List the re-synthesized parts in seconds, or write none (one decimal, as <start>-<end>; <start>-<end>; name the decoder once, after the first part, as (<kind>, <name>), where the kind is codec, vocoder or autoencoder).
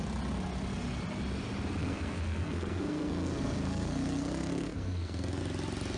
1.8-5.4 (codec, SNAC)